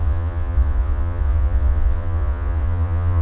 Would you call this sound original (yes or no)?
no